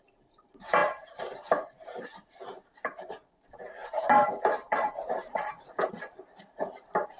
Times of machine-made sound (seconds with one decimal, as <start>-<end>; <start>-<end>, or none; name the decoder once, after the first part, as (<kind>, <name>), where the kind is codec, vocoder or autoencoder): 0.0-7.2 (vocoder, BigVGAN v2)